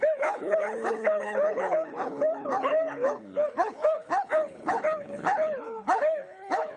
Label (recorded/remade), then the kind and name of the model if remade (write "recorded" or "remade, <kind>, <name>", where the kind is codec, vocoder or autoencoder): remade, codec, HILCodec